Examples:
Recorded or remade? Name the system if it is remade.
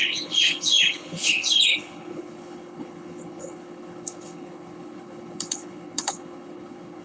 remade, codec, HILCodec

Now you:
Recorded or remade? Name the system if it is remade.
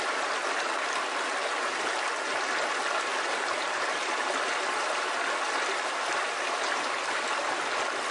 recorded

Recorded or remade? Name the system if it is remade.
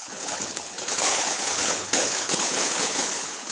remade, codec, HILCodec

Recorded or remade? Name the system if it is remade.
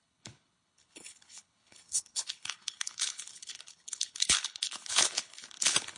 remade, codec, HILCodec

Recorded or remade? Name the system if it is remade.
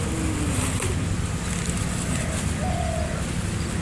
recorded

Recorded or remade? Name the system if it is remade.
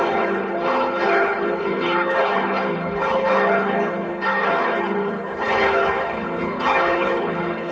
remade, codec, HILCodec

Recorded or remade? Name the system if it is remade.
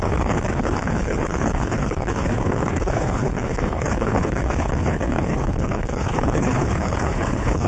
remade, codec, HILCodec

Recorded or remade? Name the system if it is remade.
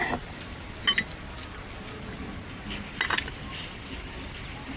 recorded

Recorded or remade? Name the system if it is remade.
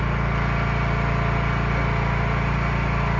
recorded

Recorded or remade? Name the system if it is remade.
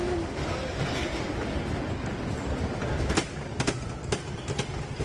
recorded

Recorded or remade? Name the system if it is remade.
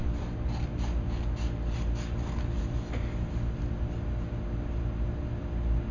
recorded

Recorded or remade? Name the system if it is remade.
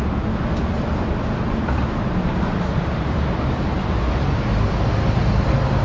recorded